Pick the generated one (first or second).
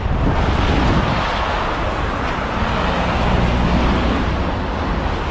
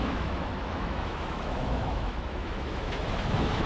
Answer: second